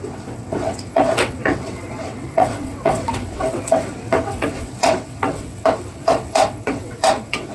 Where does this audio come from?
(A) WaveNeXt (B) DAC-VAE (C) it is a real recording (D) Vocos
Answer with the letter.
A